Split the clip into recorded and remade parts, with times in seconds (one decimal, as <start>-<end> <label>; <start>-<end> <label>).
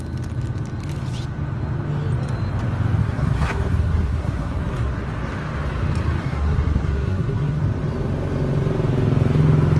0.0-3.0 recorded; 3.0-5.0 remade; 5.0-6.2 recorded; 6.2-7.6 remade; 7.6-9.8 recorded